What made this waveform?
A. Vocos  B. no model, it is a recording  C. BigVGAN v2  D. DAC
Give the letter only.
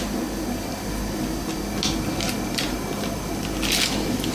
B